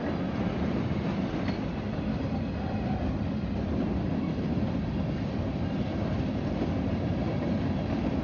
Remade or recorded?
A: recorded